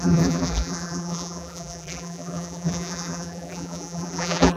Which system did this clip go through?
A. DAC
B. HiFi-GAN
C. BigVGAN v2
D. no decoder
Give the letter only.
C